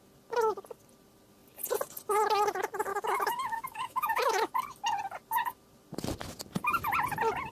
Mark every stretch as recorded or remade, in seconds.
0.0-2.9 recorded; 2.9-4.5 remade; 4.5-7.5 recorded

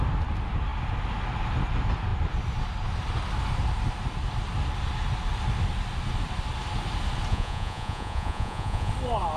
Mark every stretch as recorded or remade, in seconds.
0.0-7.3 recorded; 7.3-8.9 remade; 8.9-9.4 recorded

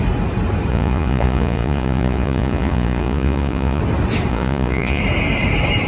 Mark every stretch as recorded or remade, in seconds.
0.0-0.7 recorded; 0.7-3.8 remade; 3.8-4.3 recorded; 4.3-5.0 remade; 5.0-5.9 recorded

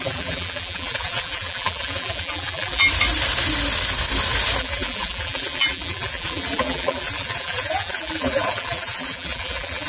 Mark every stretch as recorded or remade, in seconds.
0.0-2.8 remade; 2.8-4.6 recorded; 4.6-9.9 remade